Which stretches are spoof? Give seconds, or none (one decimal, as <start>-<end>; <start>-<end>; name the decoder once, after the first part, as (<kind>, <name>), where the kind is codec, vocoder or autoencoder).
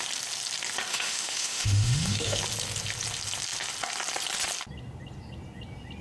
0.9-2.4 (autoencoder, DAC-VAE)